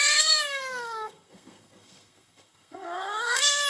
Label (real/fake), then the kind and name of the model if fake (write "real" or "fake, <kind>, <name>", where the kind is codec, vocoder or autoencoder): fake, codec, SNAC